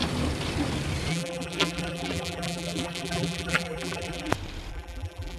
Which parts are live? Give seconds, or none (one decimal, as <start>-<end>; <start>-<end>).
0.0-1.1; 4.3-4.7